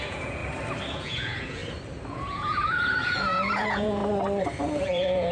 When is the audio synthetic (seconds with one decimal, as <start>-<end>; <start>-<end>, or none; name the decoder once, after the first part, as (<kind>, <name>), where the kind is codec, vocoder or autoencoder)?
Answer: 0.0-0.4 (vocoder, Vocos); 0.9-1.6; 2.1-4.0; 4.8-5.3